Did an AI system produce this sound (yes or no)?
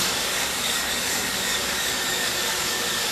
yes